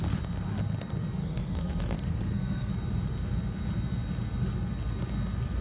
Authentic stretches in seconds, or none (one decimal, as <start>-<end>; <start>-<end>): 0.0-1.2; 2.7-5.6